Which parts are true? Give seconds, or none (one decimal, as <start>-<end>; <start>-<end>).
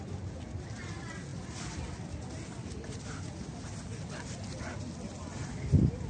0.0-6.1